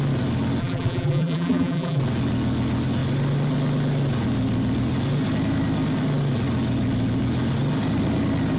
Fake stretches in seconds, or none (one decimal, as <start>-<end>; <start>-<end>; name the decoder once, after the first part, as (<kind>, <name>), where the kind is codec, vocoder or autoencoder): 0.6-2.0 (vocoder, BigVGAN v2)